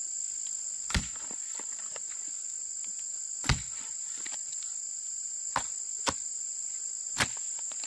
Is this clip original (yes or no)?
yes